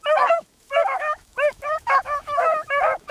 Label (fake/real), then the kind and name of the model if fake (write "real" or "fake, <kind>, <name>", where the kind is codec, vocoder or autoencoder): fake, autoencoder, DAC-VAE